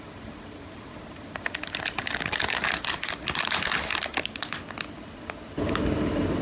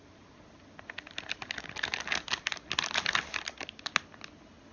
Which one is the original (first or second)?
second